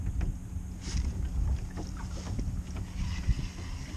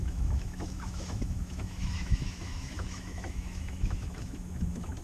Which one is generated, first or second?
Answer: second